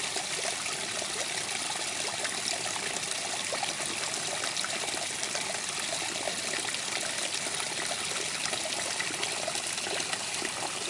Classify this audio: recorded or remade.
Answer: recorded